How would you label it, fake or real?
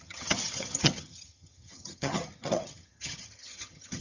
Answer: fake